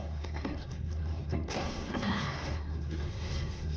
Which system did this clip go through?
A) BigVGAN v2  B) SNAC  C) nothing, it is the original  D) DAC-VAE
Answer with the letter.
B